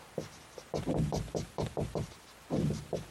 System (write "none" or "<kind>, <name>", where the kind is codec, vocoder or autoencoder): vocoder, BigVGAN v2